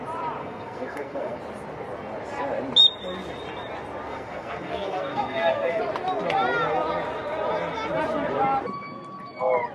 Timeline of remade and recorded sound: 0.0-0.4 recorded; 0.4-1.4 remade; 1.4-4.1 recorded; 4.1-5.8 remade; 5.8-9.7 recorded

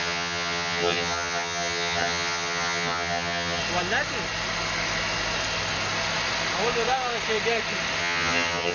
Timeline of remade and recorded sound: 0.0-3.6 remade; 3.6-8.0 recorded; 8.0-8.7 remade

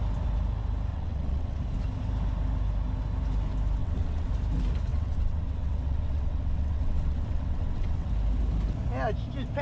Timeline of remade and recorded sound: 0.0-0.9 recorded; 0.9-1.6 remade; 1.6-3.8 recorded; 3.8-4.3 remade; 4.3-4.9 recorded; 4.9-8.1 remade; 8.1-9.6 recorded

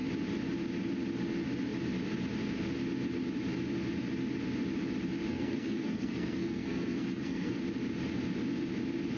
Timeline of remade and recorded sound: 0.0-5.3 recorded; 5.3-7.6 remade; 7.6-9.2 recorded

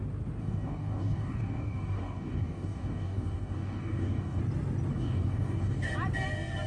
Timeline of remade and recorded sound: 0.0-0.4 recorded; 0.4-4.4 remade; 4.4-4.9 recorded; 4.9-5.9 remade; 5.9-6.7 recorded

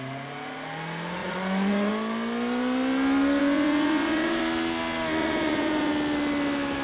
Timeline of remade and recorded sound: 0.0-1.2 recorded; 1.2-1.9 remade; 1.9-3.4 recorded; 3.4-4.4 remade; 4.4-5.2 recorded; 5.2-5.9 remade; 5.9-6.8 recorded

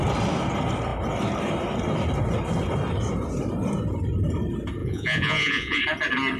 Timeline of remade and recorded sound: 0.0-4.8 recorded; 4.8-5.8 remade; 5.8-6.4 recorded